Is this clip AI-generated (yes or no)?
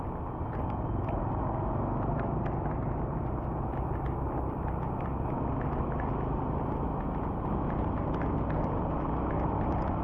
no